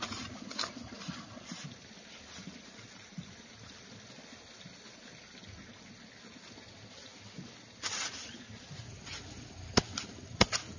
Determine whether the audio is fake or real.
real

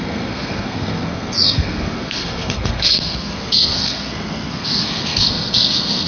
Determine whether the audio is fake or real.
fake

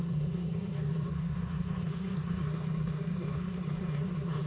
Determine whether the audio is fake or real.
fake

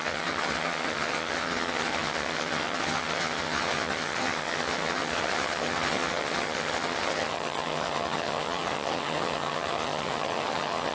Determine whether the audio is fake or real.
fake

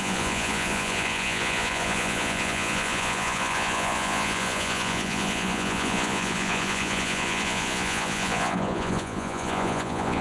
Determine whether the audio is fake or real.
fake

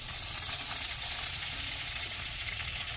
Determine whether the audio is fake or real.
fake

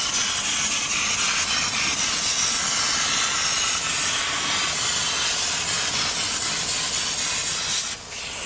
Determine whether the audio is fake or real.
real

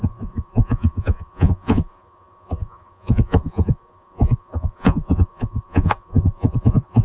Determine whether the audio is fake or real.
fake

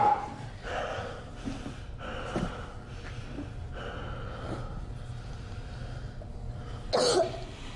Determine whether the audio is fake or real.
real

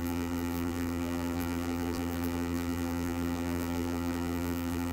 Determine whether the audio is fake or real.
fake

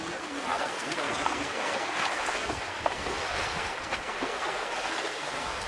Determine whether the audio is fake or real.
fake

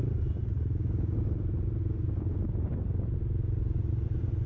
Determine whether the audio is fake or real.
real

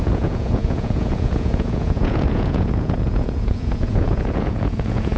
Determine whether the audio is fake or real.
fake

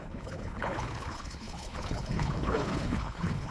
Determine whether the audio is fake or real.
fake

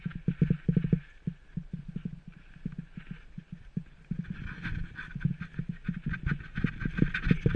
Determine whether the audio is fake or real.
real